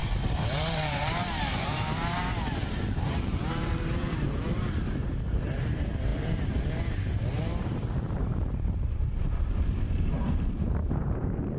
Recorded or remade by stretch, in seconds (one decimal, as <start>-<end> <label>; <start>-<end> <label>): 0.0-11.6 remade